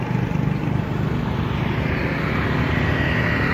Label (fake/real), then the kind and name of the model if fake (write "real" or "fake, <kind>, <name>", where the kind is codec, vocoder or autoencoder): real